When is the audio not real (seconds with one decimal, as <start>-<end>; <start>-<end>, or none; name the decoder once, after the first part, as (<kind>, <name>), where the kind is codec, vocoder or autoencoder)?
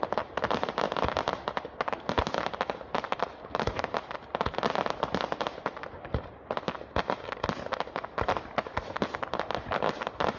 none